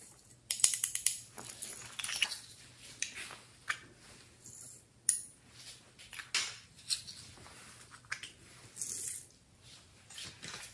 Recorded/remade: recorded